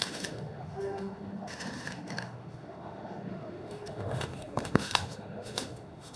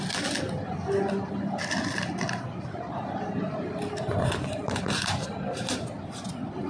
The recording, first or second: second